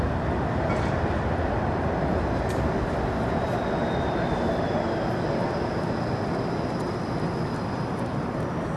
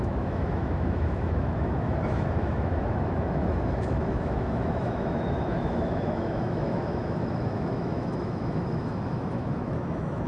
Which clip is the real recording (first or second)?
first